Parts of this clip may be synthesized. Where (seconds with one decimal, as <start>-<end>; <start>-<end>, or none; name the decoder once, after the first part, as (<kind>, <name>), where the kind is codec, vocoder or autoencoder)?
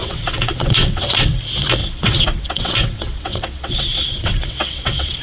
0.0-1.4 (vocoder, WaveNeXt); 1.8-5.2